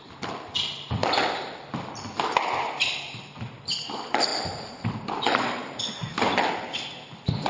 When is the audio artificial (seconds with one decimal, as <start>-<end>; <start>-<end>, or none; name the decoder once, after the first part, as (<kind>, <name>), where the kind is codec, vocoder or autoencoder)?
none